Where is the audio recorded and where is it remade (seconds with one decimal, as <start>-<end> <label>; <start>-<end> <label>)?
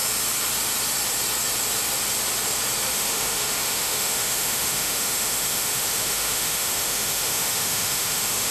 0.0-2.9 recorded; 2.9-8.5 remade